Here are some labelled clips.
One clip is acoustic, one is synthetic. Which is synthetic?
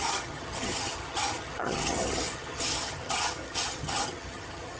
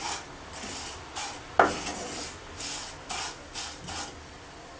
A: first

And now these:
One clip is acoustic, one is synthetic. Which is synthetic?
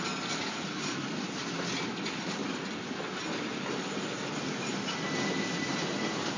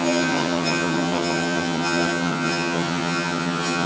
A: second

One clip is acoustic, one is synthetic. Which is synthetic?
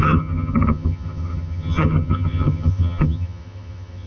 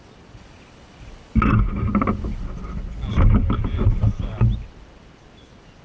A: first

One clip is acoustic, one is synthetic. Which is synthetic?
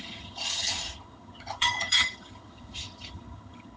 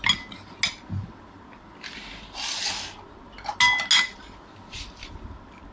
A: first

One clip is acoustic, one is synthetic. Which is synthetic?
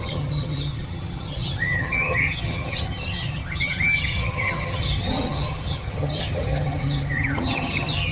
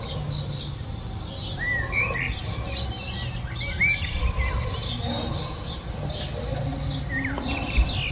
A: first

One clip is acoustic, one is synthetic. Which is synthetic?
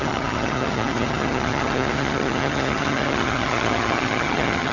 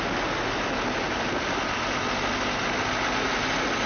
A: first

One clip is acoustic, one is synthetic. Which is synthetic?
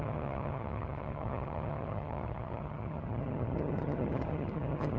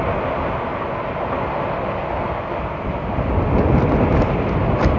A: first